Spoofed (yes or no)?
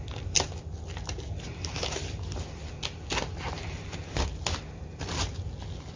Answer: no